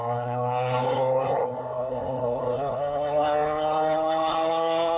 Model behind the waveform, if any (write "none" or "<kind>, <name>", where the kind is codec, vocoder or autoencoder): codec, SNAC